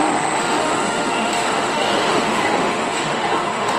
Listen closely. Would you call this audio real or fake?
fake